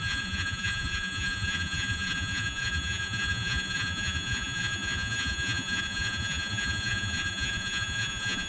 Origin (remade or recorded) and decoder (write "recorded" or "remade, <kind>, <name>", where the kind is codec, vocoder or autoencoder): remade, vocoder, Vocos